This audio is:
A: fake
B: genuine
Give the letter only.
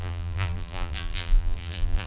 A